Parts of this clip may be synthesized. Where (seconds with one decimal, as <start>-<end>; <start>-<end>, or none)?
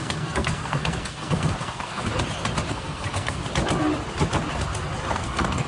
0.0-2.1; 2.7-3.4; 5.1-5.7